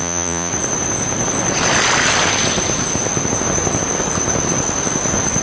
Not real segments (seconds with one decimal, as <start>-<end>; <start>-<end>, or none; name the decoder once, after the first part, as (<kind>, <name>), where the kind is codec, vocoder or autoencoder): 0.0-0.5 (vocoder, Vocos)